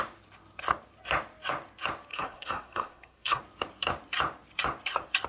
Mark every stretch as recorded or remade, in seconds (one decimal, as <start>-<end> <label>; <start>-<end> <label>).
0.0-2.1 recorded; 2.1-3.4 remade; 3.4-5.3 recorded

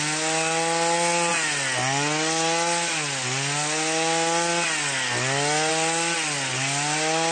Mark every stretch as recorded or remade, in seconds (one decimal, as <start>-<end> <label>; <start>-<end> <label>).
0.0-7.3 recorded